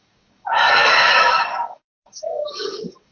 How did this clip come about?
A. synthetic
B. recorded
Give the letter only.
A